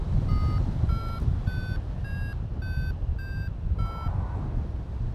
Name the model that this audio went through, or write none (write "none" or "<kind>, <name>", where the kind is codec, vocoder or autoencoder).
none